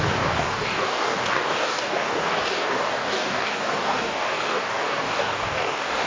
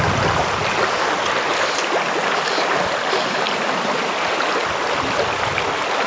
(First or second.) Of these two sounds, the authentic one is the second